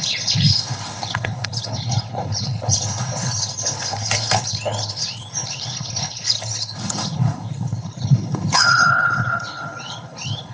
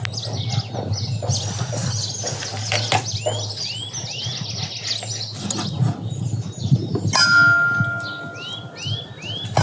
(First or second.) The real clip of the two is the second